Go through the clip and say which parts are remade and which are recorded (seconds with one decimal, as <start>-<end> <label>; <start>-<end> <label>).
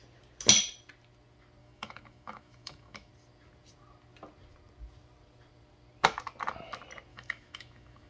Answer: 0.0-1.6 recorded; 1.6-3.1 remade; 3.1-7.1 recorded; 7.1-8.1 remade